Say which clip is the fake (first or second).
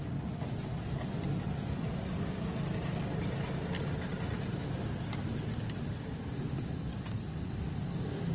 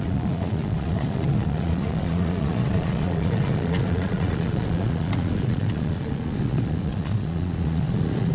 second